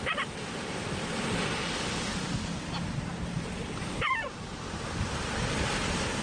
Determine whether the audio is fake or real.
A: real